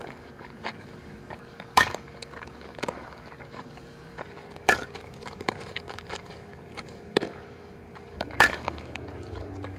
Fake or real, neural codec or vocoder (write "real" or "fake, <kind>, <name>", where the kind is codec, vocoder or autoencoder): fake, codec, DAC